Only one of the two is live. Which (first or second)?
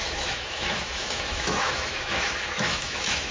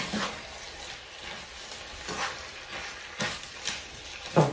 second